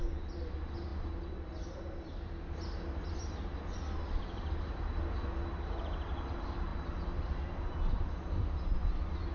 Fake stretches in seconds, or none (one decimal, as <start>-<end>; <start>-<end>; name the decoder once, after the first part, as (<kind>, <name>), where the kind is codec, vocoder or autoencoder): none